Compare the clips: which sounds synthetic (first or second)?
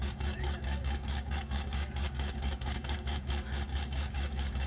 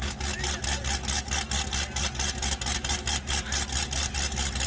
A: first